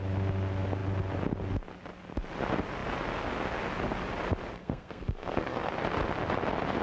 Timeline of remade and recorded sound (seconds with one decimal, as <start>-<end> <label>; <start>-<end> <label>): 0.0-4.6 recorded; 4.6-5.7 remade; 5.7-6.8 recorded